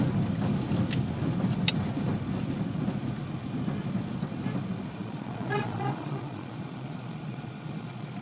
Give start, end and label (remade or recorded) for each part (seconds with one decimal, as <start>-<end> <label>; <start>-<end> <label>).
0.0-5.0 recorded; 5.0-8.2 remade